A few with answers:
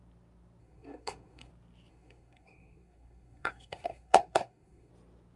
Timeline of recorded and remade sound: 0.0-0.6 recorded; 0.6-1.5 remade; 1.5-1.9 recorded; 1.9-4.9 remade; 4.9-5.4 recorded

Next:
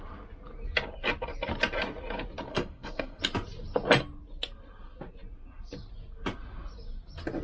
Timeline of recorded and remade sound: 0.0-2.5 recorded; 2.5-3.2 remade; 3.2-7.4 recorded

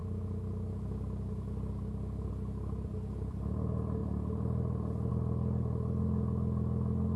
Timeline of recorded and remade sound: 0.0-7.2 recorded

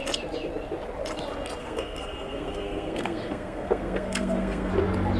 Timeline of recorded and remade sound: 0.0-1.6 recorded; 1.6-4.7 remade; 4.7-5.2 recorded